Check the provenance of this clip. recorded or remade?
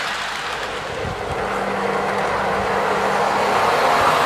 recorded